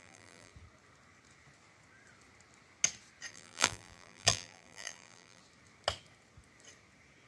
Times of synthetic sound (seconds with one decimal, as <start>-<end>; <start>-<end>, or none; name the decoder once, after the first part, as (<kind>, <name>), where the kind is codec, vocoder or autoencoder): 0.0-0.5 (vocoder, BigVGAN v2); 3.3-5.4